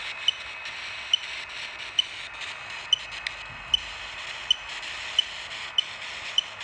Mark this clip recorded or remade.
recorded